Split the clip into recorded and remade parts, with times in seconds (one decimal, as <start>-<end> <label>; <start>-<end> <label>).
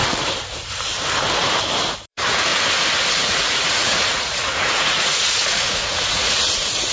0.0-2.1 recorded; 2.1-2.5 remade; 2.5-3.1 recorded; 3.1-6.9 remade